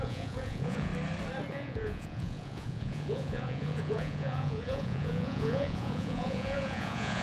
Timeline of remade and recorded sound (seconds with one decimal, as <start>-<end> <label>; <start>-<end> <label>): 0.0-0.9 remade; 0.9-1.5 recorded; 1.5-7.2 remade